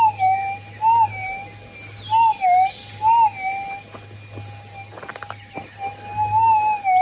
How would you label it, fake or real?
real